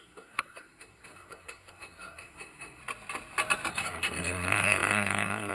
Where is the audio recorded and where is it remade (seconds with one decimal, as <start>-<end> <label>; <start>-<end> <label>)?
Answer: 0.0-2.8 remade; 2.8-3.7 recorded; 3.7-5.5 remade